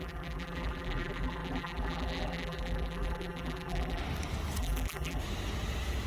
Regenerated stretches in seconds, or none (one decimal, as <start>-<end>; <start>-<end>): 0.0-4.0; 4.6-5.2